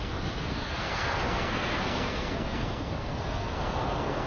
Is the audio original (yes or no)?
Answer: no